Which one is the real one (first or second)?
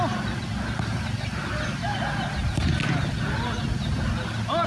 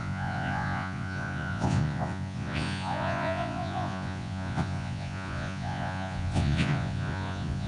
first